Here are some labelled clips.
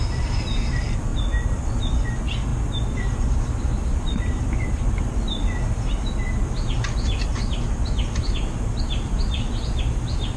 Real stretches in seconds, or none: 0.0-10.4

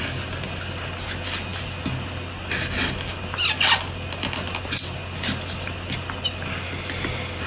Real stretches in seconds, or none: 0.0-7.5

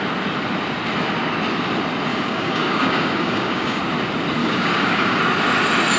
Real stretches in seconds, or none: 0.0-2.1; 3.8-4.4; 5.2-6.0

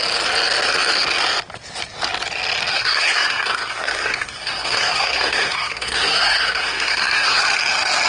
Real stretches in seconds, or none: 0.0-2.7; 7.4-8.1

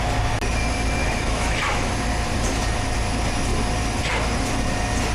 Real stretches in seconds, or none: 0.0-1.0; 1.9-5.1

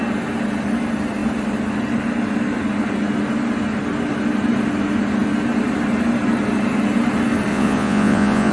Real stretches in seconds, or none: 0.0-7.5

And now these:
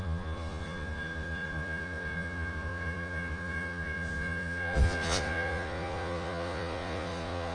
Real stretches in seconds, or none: none

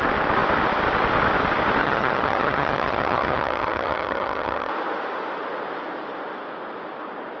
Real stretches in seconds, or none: 0.0-1.8; 4.7-7.4